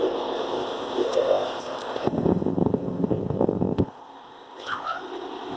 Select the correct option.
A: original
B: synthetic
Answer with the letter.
B